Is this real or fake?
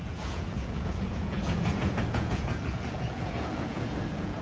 fake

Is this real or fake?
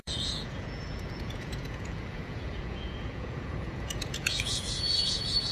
fake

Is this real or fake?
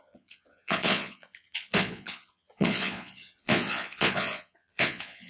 fake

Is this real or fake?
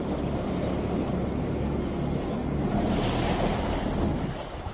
real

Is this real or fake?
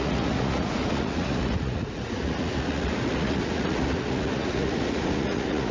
fake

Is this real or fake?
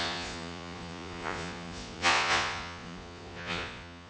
fake